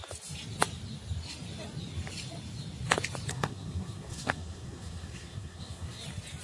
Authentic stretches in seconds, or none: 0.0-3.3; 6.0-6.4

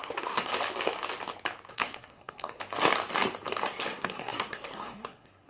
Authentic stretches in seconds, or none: 0.5-1.7; 2.6-3.8

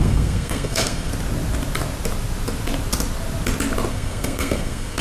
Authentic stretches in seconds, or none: 1.1-3.9

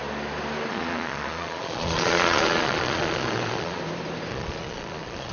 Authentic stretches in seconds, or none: 0.0-0.7; 3.8-4.3

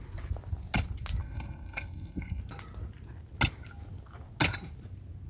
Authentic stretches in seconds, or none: 0.0-1.2; 2.4-5.3

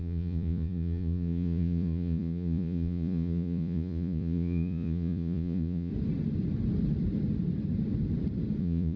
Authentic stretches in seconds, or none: 5.9-8.6

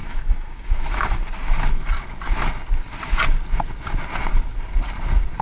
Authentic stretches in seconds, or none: 1.2-5.4